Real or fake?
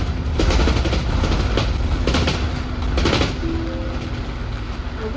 real